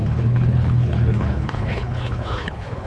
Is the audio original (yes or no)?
no